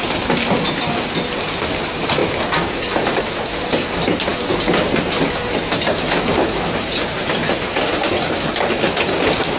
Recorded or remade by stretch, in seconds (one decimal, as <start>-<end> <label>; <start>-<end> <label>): 0.0-9.6 recorded